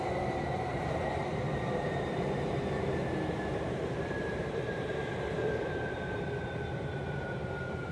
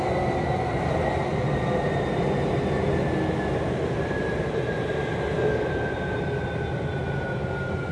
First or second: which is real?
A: second